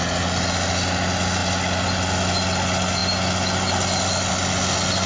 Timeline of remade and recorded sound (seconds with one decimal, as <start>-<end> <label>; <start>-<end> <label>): 0.0-5.1 recorded